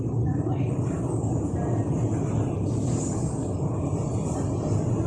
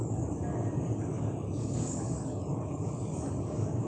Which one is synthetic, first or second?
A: second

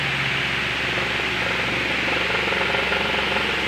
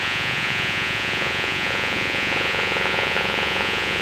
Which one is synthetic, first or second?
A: second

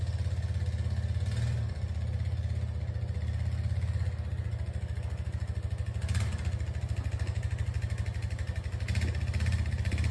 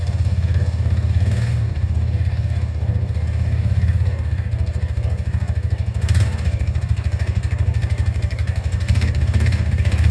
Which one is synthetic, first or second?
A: second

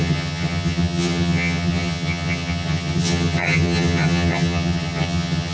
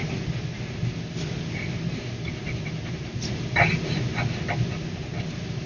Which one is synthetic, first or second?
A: first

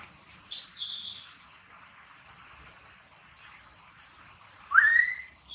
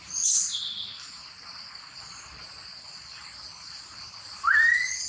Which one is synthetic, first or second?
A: first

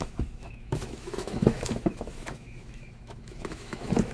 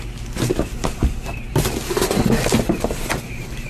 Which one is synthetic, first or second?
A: first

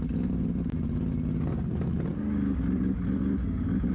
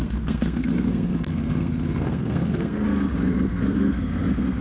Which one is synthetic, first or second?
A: second